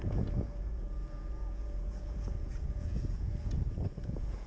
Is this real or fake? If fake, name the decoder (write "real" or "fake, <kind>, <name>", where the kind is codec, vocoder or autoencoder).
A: fake, vocoder, Vocos